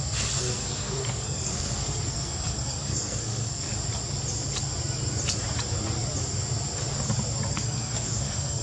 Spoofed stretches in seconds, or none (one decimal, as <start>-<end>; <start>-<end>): 0.0-3.7; 7.5-8.6